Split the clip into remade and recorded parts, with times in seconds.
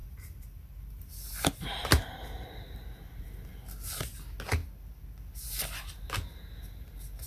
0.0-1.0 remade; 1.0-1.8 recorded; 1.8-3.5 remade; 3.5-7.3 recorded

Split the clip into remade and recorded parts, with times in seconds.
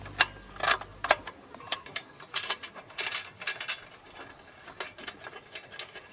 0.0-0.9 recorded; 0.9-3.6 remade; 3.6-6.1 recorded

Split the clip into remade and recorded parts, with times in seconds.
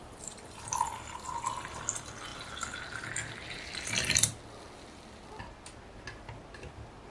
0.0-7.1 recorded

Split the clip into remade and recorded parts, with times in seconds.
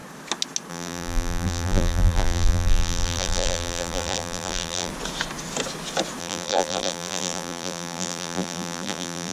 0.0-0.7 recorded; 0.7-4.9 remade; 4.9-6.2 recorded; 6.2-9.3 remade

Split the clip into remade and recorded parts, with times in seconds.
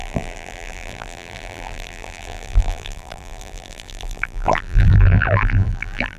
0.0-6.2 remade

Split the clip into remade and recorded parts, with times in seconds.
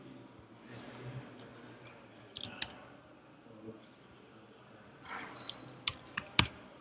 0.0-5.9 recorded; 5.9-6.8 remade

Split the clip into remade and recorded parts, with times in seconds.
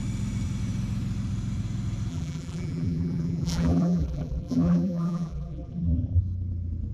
0.0-2.1 recorded; 2.1-6.2 remade; 6.2-6.9 recorded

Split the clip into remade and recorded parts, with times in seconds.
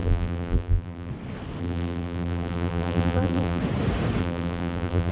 0.0-1.1 remade; 1.1-1.6 recorded; 1.6-3.6 remade; 3.6-4.2 recorded; 4.2-5.1 remade